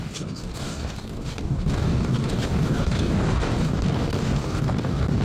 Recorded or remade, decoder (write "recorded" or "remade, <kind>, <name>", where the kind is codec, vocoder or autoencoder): remade, codec, DAC